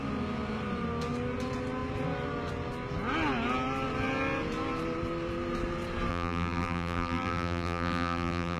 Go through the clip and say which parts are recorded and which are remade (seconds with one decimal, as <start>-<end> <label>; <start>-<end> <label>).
0.0-6.1 recorded; 6.1-8.6 remade